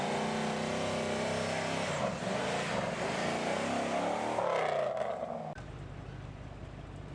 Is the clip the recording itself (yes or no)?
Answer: yes